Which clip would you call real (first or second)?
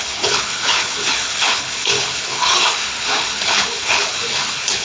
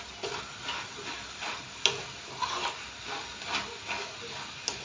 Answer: second